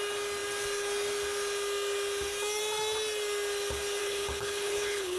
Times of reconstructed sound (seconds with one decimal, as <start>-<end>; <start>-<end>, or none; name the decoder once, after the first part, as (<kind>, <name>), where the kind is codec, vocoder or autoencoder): 4.0-5.2 (codec, HILCodec)